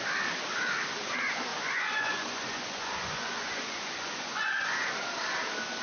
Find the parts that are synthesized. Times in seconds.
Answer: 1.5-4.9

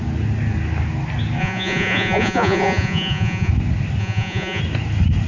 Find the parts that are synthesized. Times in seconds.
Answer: 1.4-3.5; 4.0-4.6

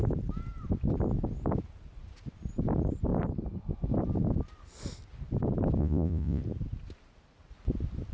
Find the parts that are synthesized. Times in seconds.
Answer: 5.8-6.4

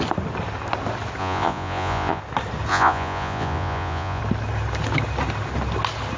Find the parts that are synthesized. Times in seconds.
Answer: 1.2-2.2; 2.7-4.2

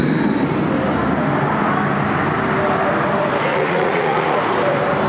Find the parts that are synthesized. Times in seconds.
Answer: 3.5-4.4

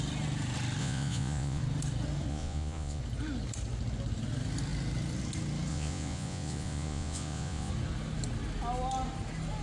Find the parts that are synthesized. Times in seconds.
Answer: 0.8-1.6; 2.3-3.0; 5.7-7.7

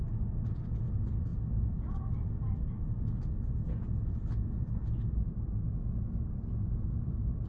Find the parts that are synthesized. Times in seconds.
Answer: none

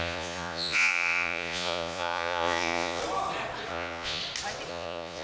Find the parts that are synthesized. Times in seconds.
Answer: 0.0-3.0; 3.7-4.2; 4.7-5.2